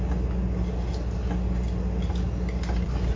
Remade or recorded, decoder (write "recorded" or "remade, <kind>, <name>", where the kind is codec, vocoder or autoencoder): recorded